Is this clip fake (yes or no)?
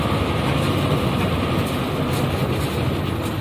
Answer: no